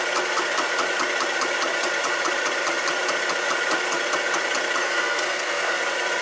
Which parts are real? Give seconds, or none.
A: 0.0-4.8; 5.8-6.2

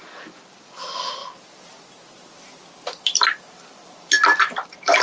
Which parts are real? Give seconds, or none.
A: 0.0-5.0

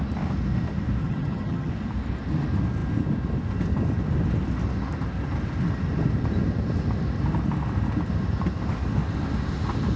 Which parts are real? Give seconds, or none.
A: 0.0-1.0; 1.7-10.0

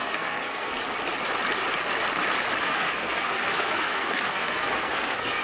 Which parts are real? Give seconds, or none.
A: 0.8-2.6

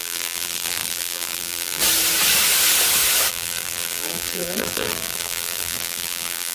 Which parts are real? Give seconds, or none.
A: 1.8-3.3

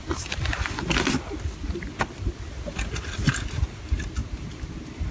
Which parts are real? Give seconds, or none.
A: 0.0-4.2

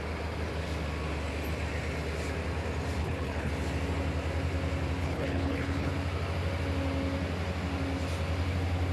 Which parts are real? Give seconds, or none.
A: 0.0-3.0; 3.5-5.0; 5.9-8.9

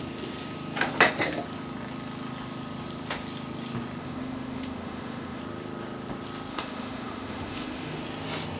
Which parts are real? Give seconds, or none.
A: 0.0-4.0; 5.4-6.5; 8.0-8.6